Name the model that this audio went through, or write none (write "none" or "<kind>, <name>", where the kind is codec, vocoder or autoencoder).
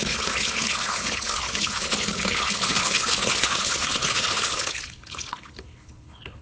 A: codec, HILCodec